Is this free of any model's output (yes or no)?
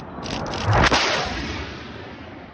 yes